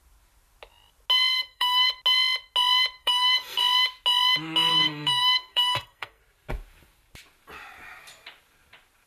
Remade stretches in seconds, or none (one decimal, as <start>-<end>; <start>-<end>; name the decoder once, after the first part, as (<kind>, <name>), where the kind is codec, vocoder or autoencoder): 1.3-1.9 (codec, SNAC); 3.0-3.6; 4.7-6.2